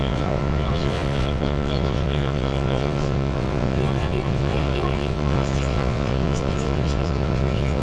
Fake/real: fake